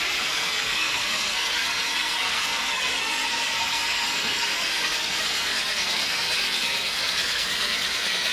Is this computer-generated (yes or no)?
yes